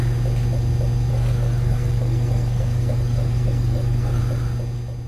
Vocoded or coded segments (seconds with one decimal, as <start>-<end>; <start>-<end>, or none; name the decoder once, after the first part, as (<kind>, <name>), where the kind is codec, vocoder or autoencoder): 1.1-4.2 (codec, SNAC)